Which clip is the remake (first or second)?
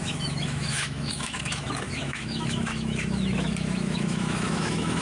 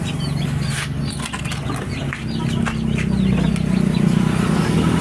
first